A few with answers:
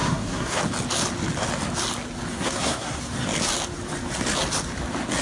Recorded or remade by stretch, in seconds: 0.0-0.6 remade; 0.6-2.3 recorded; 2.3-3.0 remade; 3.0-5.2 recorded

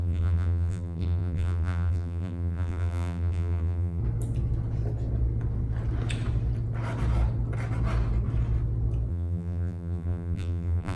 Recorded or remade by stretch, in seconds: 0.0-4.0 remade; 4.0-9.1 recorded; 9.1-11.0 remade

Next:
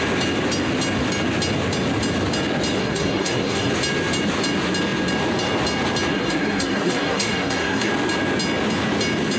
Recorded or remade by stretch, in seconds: 0.0-2.8 recorded; 2.8-3.7 remade; 3.7-6.1 recorded; 6.1-7.9 remade; 7.9-9.4 recorded

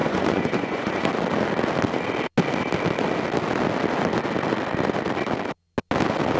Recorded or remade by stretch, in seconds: 0.0-1.1 remade; 1.1-6.4 recorded

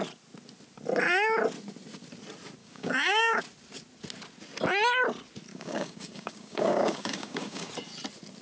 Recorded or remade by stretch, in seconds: 0.0-2.6 recorded; 2.6-3.4 remade; 3.4-5.5 recorded; 5.5-7.7 remade; 7.7-8.4 recorded

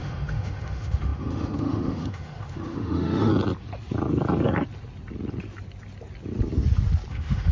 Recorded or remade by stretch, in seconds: 0.0-3.3 remade; 3.3-7.1 recorded; 7.1-7.5 remade